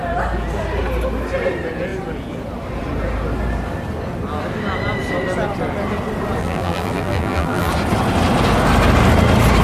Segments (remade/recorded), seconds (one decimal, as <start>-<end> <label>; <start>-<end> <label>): 0.0-6.4 recorded; 6.4-7.7 remade; 7.7-9.6 recorded